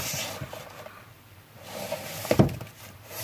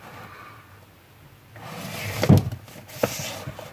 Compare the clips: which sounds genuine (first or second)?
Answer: second